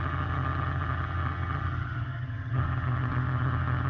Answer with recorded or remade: remade